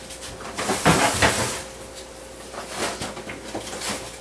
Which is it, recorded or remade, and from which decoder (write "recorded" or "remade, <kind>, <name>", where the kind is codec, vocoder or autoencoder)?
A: recorded